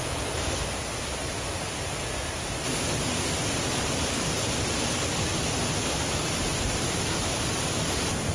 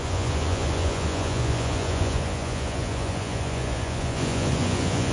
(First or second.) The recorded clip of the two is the first